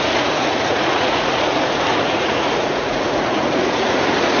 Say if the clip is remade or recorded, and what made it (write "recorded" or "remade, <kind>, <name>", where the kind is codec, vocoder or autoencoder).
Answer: remade, vocoder, Vocos